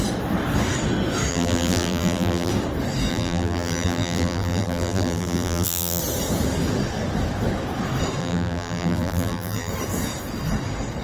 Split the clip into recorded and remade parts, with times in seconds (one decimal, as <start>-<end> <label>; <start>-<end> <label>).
0.0-1.3 recorded; 1.3-2.5 remade; 2.5-3.1 recorded; 3.1-6.0 remade; 6.0-8.2 recorded; 8.2-9.7 remade; 9.7-11.0 recorded